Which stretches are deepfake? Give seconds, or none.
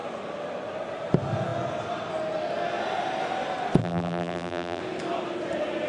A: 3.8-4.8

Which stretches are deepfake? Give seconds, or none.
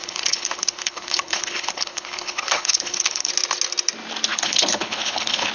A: 0.0-3.3; 4.3-5.5